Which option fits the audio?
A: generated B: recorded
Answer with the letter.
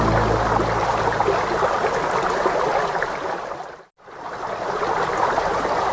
B